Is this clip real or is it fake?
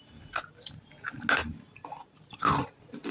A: real